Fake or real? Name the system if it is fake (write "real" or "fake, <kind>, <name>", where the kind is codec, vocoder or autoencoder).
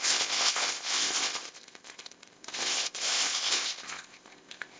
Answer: fake, codec, ZipCodec